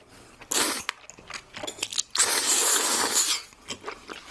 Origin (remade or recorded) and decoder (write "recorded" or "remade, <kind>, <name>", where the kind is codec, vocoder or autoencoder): recorded